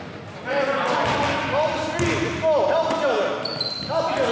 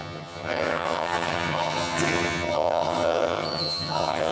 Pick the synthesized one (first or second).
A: second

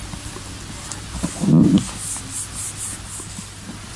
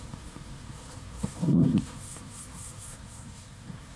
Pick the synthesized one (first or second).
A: second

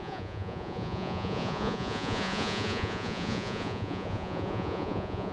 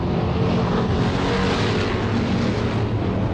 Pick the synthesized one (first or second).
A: first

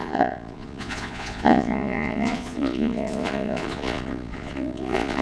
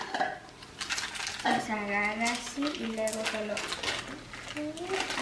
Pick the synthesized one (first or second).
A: first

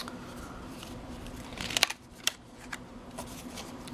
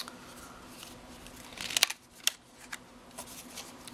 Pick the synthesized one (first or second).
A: first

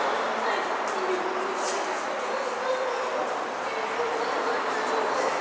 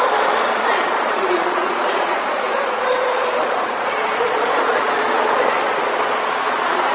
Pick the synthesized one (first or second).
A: second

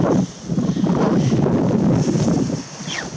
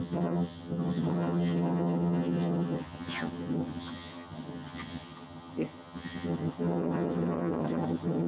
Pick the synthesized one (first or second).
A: second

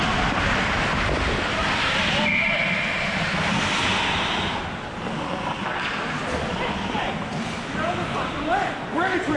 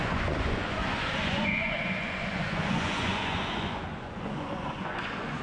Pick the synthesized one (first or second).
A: second